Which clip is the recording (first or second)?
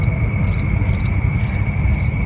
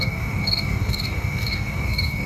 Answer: first